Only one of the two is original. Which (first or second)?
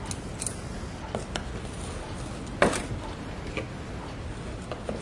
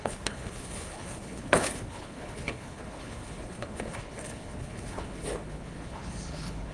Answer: first